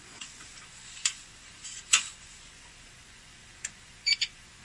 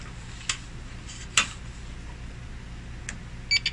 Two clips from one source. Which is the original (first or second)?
second